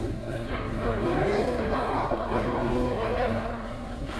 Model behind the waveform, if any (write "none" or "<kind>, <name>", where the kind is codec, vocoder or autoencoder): codec, SNAC